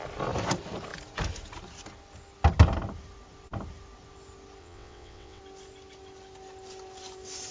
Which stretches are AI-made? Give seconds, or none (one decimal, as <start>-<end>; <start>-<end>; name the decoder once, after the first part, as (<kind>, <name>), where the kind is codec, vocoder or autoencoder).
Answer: 4.6-5.4 (vocoder, WaveNeXt)

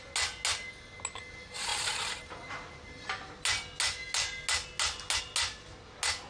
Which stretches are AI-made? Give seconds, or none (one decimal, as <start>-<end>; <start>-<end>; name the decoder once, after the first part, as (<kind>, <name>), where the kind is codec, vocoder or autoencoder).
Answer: none

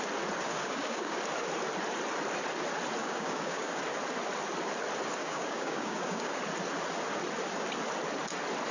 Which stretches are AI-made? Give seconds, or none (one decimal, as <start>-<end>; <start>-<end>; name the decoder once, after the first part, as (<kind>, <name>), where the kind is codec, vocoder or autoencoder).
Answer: 0.5-1.2 (codec, DAC); 3.0-3.8; 5.2-6.4

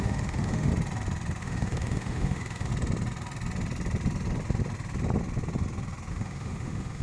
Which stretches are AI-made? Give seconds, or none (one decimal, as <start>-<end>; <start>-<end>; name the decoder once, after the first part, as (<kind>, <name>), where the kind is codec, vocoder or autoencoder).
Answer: 0.0-0.7 (autoencoder, DAC-VAE); 1.4-2.7; 6.1-7.0

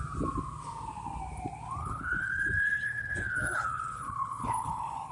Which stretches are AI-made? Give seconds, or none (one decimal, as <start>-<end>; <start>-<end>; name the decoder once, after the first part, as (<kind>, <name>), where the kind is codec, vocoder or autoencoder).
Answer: 1.8-5.1 (codec, HILCodec)

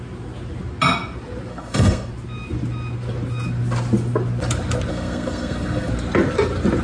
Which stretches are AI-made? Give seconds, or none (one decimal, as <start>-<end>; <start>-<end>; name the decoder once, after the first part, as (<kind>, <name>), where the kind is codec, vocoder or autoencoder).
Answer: 1.5-2.1 (codec, SNAC); 4.9-5.9